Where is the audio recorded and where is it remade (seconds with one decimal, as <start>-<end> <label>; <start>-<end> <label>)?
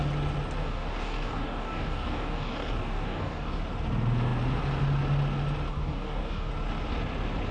0.0-0.6 recorded; 0.6-3.6 remade; 3.6-5.7 recorded; 5.7-6.5 remade; 6.5-7.5 recorded